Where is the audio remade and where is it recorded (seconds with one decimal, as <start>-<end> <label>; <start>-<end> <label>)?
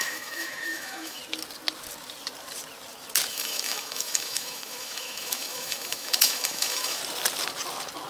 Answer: 0.0-1.2 remade; 1.2-3.3 recorded; 3.3-7.0 remade; 7.0-8.1 recorded